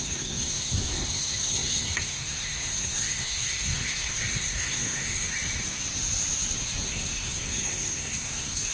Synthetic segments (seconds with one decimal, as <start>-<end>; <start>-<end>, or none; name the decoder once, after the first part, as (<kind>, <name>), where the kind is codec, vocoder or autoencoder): 0.0-5.3 (codec, SNAC); 6.9-8.7